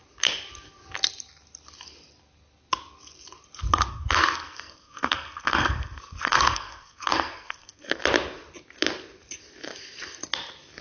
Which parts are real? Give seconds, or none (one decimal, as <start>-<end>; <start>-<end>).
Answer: 0.0-3.9; 8.0-10.8